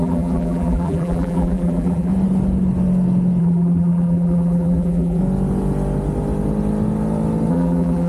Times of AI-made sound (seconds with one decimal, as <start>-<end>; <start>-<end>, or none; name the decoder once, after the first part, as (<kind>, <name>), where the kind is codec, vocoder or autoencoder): 0.0-2.1 (vocoder, BigVGAN v2); 3.4-5.2; 7.5-8.1